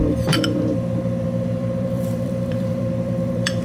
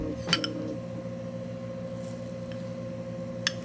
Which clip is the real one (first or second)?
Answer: second